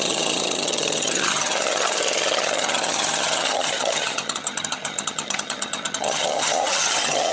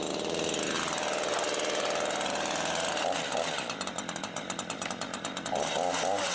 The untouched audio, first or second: second